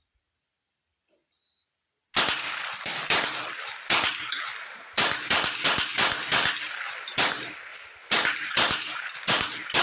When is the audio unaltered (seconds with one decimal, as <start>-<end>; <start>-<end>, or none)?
1.2-2.2

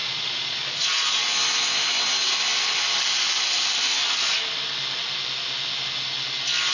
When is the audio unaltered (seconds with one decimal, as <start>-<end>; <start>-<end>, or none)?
1.3-6.7

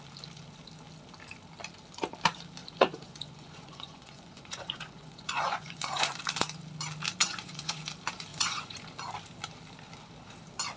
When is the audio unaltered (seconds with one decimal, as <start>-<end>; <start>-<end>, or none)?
0.0-2.6; 6.2-7.2; 7.8-8.3; 8.8-10.8

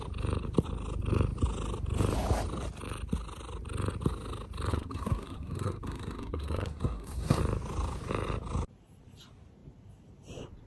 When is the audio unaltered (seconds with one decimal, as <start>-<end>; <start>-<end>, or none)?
0.0-4.7; 7.4-10.7

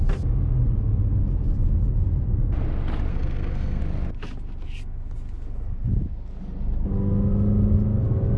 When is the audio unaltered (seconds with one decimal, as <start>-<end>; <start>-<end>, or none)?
0.0-3.1; 3.8-8.4

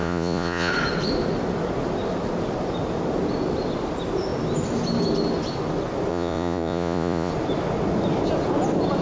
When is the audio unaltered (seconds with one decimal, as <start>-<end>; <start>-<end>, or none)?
0.7-6.1; 7.3-9.0